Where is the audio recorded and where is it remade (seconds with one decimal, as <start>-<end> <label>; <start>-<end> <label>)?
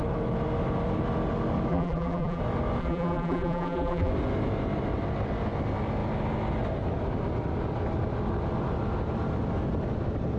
0.0-1.7 recorded; 1.7-2.4 remade; 2.4-2.8 recorded; 2.8-4.1 remade; 4.1-10.4 recorded